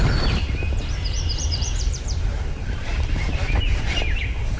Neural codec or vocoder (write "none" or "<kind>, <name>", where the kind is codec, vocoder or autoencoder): vocoder, BigVGAN v2